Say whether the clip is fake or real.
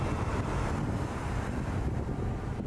real